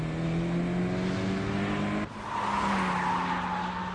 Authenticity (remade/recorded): recorded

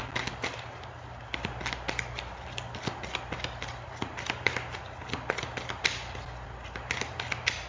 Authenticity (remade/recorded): recorded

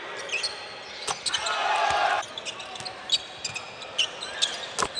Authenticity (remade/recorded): recorded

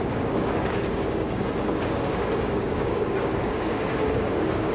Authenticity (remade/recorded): remade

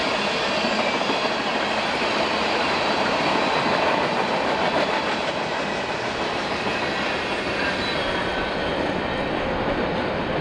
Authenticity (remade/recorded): recorded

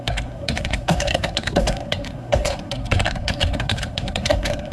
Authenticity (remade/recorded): remade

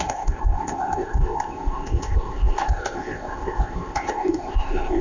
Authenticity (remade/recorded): remade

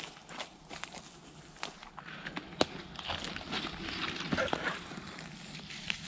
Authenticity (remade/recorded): recorded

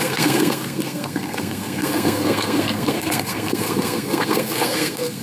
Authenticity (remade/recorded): remade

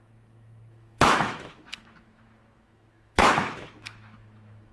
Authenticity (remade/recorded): remade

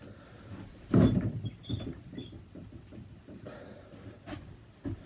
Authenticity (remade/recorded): remade